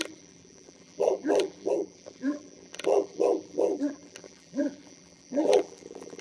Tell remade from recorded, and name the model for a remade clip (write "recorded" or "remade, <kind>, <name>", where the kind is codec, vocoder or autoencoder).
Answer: remade, vocoder, BigVGAN v2